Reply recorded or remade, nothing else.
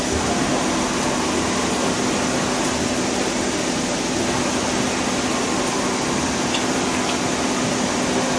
recorded